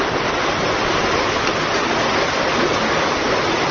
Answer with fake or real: real